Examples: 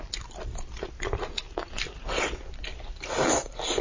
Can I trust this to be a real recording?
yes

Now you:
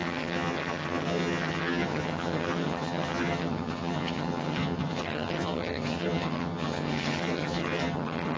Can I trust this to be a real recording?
no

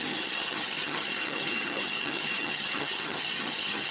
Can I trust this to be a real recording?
no